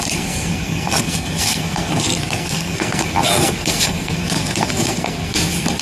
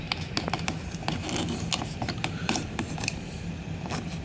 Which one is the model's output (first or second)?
first